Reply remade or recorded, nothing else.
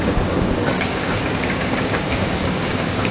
remade